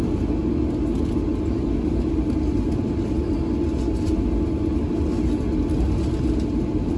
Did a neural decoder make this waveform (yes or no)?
no